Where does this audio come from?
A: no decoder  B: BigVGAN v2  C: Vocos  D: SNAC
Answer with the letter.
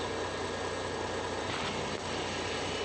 A